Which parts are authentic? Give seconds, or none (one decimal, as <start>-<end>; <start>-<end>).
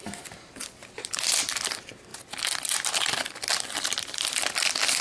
0.0-5.0